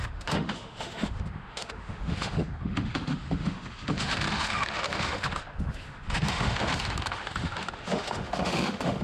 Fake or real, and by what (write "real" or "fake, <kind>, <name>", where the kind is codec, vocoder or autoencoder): fake, autoencoder, DAC-VAE